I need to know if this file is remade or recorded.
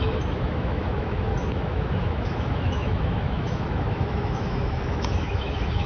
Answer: remade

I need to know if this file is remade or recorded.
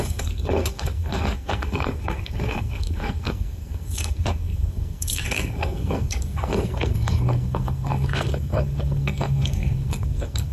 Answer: remade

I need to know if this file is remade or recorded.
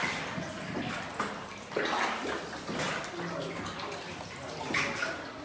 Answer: recorded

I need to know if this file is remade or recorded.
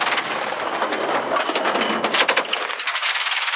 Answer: recorded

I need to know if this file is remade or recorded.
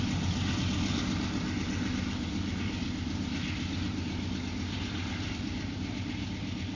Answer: recorded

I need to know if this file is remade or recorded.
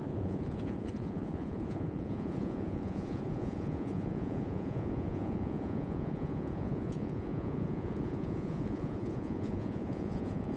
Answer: remade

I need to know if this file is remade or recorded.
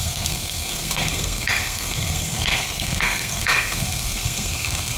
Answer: remade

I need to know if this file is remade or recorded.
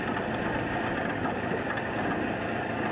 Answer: recorded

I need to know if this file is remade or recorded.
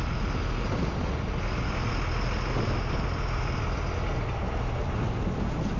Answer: recorded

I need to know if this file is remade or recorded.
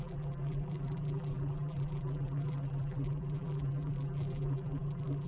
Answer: remade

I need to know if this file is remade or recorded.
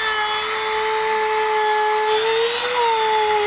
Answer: recorded